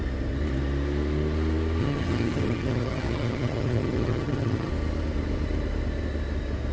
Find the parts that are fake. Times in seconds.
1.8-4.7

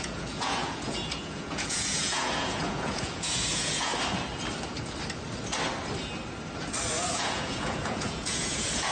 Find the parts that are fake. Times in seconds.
0.0-3.9; 6.9-8.9

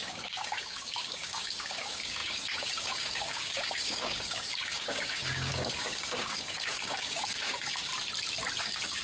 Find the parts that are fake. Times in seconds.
0.0-7.9; 8.6-9.0

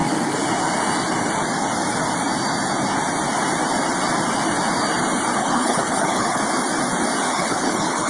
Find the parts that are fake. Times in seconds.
5.4-6.4; 7.3-8.1

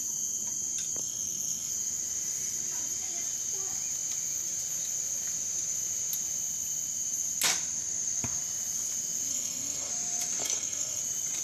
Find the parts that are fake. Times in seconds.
1.0-1.7; 9.3-9.9; 10.4-11.0

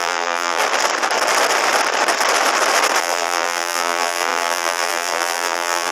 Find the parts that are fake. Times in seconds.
0.0-0.6; 3.0-5.9

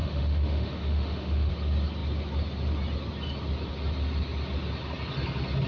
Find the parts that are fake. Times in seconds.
0.0-1.5

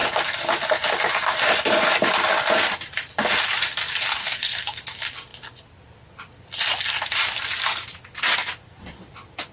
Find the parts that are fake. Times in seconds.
4.2-4.8